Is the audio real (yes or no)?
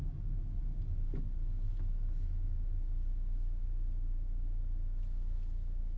yes